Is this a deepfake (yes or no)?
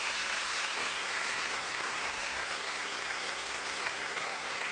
yes